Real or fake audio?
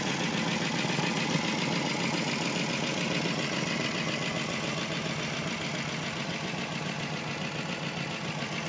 real